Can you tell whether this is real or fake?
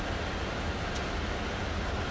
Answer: real